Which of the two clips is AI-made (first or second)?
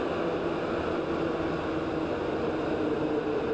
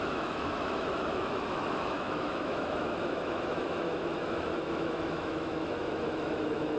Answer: second